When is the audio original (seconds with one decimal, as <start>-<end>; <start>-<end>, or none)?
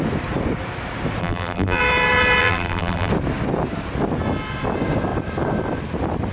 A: 0.0-1.2; 1.8-2.4; 3.1-6.3